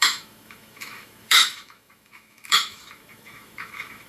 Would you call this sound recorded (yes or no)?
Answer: no